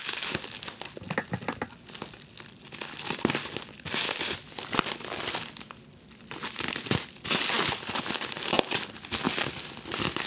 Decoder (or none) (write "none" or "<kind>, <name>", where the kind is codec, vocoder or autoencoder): none